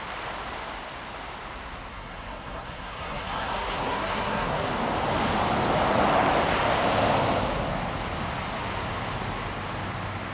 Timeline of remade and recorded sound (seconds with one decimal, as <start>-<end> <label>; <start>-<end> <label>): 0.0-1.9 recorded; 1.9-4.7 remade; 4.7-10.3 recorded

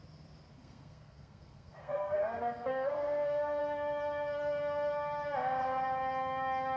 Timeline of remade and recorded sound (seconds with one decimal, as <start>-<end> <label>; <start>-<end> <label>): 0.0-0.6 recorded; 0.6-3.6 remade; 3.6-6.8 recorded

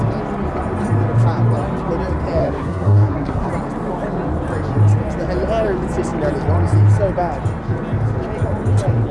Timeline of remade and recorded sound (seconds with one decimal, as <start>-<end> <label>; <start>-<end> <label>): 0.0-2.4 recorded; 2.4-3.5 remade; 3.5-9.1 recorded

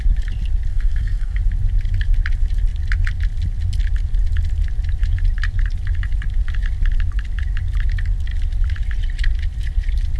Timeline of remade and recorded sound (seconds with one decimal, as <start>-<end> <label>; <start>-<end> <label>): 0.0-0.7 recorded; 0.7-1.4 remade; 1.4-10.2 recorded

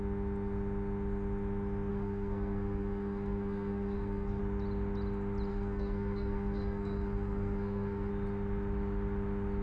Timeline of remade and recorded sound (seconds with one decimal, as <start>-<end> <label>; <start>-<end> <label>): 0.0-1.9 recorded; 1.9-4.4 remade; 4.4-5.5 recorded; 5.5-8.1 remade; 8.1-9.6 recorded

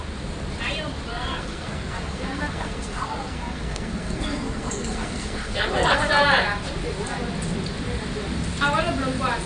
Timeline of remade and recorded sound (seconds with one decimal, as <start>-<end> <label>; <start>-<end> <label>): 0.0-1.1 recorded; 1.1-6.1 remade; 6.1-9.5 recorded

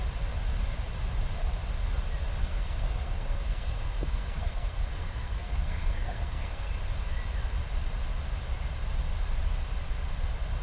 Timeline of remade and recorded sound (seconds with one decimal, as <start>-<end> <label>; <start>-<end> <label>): 0.0-2.4 recorded; 2.4-6.7 remade; 6.7-10.6 recorded

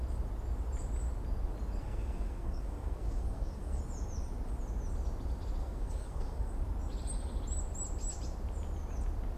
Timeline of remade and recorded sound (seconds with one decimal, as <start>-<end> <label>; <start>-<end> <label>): 0.0-1.8 recorded; 1.8-3.8 remade; 3.8-5.6 recorded; 5.6-6.5 remade; 6.5-9.4 recorded